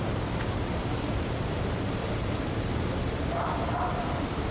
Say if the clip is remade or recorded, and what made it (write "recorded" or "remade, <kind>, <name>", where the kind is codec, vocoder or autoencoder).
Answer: remade, vocoder, BigVGAN v2